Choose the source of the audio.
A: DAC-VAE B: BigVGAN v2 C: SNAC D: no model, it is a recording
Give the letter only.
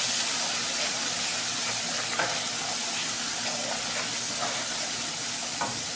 D